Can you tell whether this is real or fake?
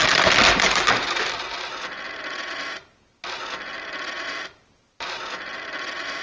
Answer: real